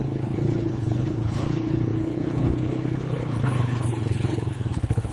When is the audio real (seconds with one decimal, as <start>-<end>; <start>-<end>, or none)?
none